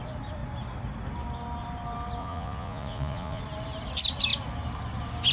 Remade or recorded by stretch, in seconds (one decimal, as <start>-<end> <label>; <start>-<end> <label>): 0.0-2.2 recorded; 2.2-3.4 remade; 3.4-5.3 recorded